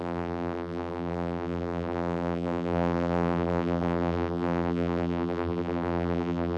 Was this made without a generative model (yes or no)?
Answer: no